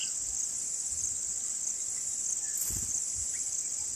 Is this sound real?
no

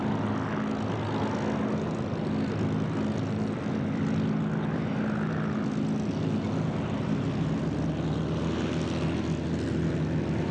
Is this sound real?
yes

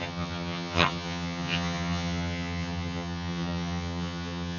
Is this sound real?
no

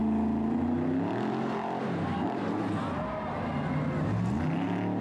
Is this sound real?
yes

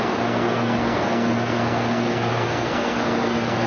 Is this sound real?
no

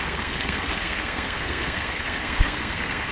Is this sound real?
no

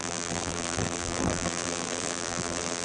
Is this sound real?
no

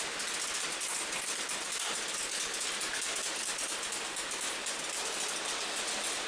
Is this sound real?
yes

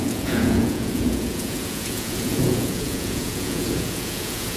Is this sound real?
no